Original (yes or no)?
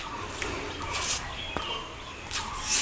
yes